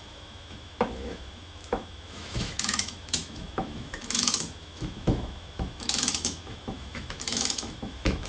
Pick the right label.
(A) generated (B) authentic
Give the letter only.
A